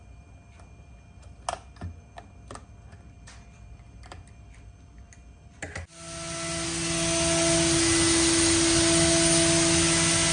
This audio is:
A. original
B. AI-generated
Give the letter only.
A